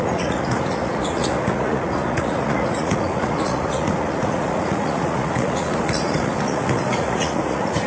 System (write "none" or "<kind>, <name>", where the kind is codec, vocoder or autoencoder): vocoder, Vocos